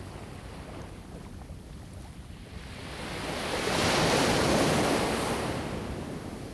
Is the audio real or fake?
real